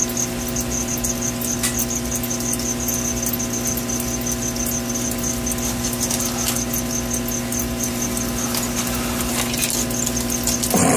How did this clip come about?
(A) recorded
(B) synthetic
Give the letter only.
A